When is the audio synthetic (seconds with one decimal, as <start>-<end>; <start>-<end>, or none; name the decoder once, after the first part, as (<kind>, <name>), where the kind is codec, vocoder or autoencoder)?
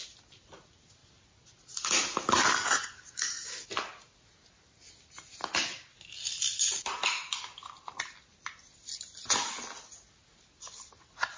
none